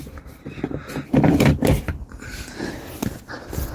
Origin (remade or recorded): recorded